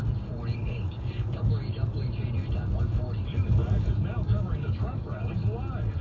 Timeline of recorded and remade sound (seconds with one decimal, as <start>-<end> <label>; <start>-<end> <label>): 0.0-0.6 recorded; 0.6-2.2 remade; 2.2-3.6 recorded; 3.6-5.3 remade; 5.3-6.0 recorded